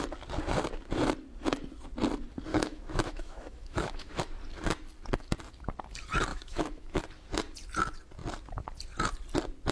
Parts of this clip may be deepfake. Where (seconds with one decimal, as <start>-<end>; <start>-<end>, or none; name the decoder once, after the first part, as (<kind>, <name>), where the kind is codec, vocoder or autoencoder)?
2.5-4.2 (autoencoder, DAC-VAE); 6.3-7.0